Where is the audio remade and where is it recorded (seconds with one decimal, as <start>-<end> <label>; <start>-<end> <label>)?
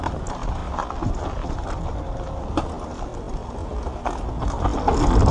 0.0-5.3 recorded